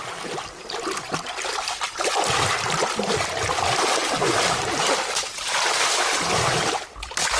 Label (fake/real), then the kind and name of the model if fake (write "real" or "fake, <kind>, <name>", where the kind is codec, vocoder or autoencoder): real